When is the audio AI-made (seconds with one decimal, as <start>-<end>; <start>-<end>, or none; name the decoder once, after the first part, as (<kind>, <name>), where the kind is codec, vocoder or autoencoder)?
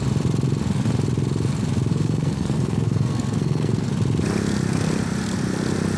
1.9-3.9 (codec, SNAC)